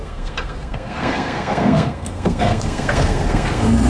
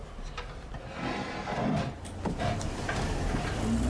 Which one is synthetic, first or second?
first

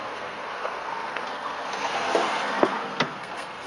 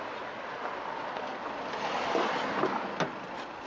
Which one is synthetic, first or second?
first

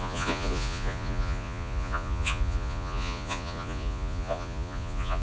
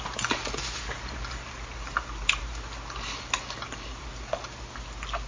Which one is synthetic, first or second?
first